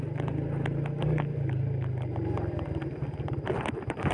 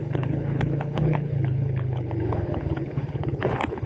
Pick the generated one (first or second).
second